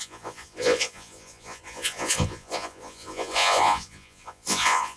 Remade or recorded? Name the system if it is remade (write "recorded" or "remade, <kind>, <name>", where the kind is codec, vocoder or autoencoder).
remade, vocoder, Vocos